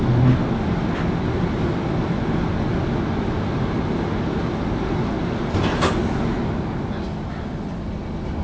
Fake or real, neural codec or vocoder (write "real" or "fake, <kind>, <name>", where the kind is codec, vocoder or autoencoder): real